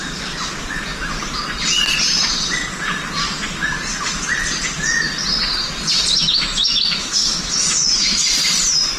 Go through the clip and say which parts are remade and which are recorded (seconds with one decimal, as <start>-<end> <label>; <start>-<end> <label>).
0.0-6.2 recorded; 6.2-8.2 remade; 8.2-9.0 recorded